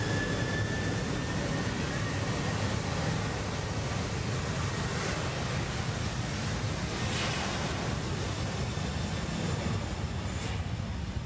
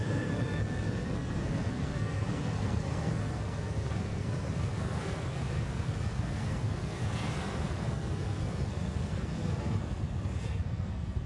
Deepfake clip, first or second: second